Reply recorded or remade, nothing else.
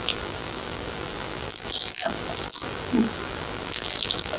remade